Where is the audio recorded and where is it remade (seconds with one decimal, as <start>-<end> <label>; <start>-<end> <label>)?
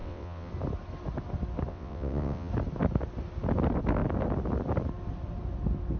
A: 0.0-0.5 remade; 0.5-1.7 recorded; 1.7-2.5 remade; 2.5-6.0 recorded